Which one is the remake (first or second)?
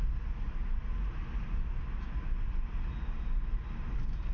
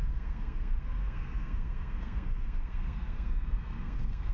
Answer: second